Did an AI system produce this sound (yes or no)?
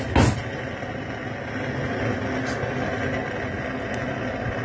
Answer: no